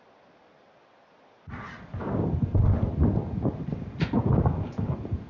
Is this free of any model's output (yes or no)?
yes